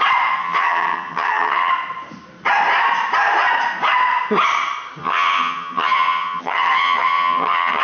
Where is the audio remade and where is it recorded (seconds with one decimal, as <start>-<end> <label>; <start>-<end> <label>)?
0.0-0.4 recorded; 0.4-1.7 remade; 1.7-5.0 recorded; 5.0-7.8 remade